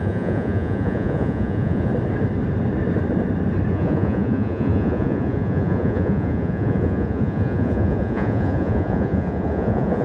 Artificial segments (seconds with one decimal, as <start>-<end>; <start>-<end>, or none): 0.0-1.9; 3.7-10.0